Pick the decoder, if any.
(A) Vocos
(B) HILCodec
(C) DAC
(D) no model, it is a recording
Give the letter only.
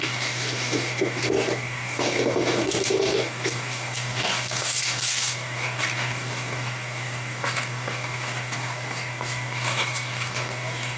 C